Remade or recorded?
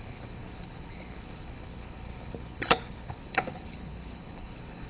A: remade